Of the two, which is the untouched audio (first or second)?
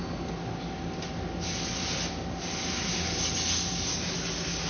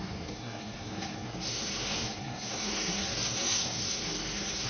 first